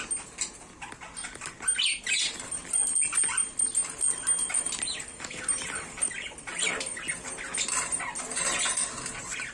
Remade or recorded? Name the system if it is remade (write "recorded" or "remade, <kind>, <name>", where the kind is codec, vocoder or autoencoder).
recorded